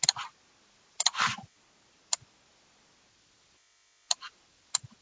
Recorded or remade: recorded